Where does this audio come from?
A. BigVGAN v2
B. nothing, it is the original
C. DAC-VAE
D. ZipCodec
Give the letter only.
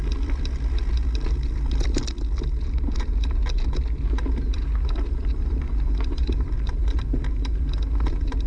B